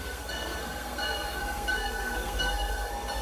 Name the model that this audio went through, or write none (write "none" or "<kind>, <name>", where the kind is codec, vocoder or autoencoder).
codec, SNAC